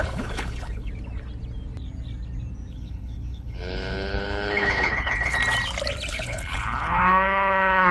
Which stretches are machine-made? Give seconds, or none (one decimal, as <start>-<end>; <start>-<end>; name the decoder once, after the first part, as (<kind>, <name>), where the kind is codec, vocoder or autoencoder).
0.0-0.9 (codec, HILCodec); 2.7-5.4; 6.1-7.9